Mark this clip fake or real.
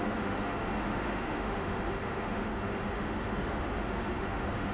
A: fake